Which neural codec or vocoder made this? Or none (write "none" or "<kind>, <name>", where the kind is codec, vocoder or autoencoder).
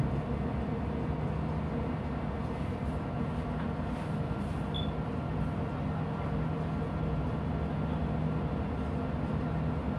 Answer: none